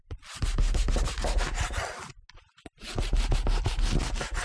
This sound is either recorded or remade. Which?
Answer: recorded